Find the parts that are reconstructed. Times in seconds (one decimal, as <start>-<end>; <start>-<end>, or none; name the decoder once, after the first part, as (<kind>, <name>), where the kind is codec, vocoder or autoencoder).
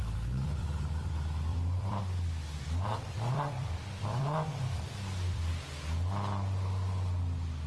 0.0-1.1 (vocoder, BigVGAN v2); 1.5-2.0; 2.9-5.5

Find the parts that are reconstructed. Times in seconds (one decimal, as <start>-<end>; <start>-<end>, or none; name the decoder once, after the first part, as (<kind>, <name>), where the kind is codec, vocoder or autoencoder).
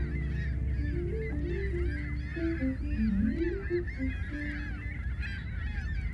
none